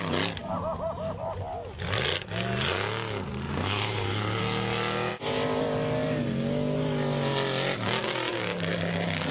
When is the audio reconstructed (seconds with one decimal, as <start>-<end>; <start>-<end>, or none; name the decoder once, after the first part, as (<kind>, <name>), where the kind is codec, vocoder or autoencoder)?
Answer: 3.5-4.4 (codec, SNAC)